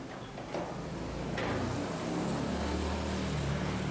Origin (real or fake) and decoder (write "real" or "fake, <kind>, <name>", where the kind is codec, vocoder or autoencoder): real